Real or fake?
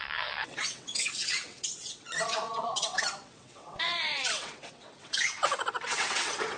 fake